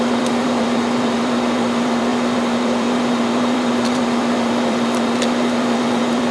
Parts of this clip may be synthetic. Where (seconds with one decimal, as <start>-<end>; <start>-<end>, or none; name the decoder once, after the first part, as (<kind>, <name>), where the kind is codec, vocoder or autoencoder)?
0.0-6.3 (vocoder, BigVGAN v2)

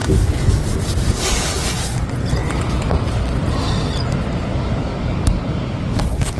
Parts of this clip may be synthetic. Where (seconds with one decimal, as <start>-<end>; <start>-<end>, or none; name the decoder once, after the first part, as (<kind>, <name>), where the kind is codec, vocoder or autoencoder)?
0.0-0.6 (codec, DAC); 4.5-6.4